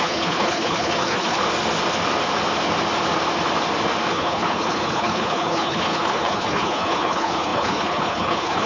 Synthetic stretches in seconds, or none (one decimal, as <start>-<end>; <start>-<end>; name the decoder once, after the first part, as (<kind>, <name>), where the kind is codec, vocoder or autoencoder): 0.0-1.4 (codec, HILCodec); 4.1-8.7